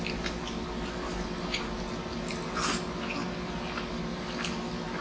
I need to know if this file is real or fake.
real